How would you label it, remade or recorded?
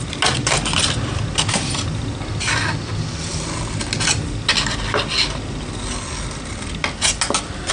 recorded